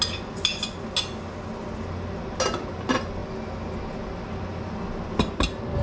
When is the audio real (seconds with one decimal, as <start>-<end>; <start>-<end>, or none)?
0.0-5.8